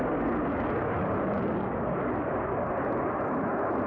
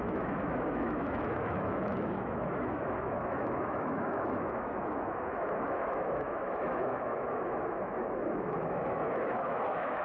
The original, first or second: first